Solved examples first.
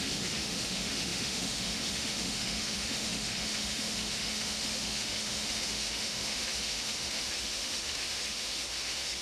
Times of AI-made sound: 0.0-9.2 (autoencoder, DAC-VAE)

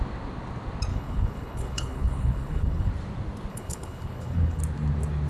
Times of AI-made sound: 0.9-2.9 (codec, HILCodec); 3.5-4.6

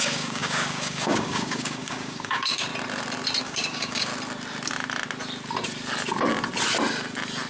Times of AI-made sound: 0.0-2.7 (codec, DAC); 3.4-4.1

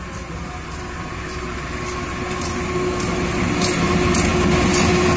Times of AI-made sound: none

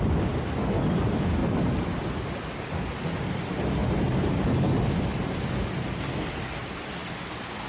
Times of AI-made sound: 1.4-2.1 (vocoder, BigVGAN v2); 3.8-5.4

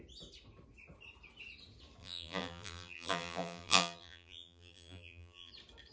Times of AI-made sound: 2.0-5.5 (vocoder, BigVGAN v2)

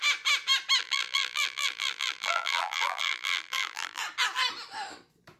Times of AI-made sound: 0.8-4.0 (vocoder, BigVGAN v2)